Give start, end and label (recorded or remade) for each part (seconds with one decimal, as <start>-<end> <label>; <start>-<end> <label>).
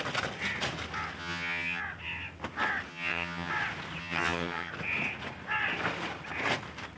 0.0-1.2 recorded; 1.2-1.8 remade; 1.8-2.9 recorded; 2.9-3.5 remade; 3.5-4.0 recorded; 4.0-4.7 remade; 4.7-7.0 recorded